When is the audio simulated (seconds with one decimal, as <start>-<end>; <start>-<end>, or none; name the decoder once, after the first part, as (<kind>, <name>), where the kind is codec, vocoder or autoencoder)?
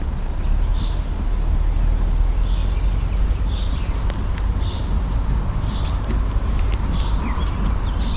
none